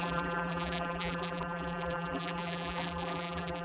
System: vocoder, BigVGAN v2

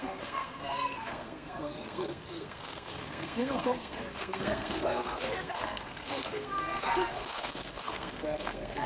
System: codec, SNAC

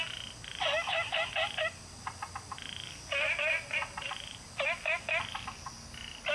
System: none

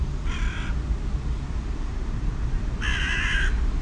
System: none